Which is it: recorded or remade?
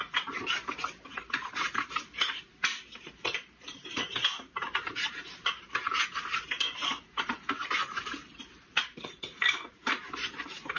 remade